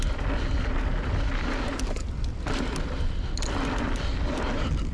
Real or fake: real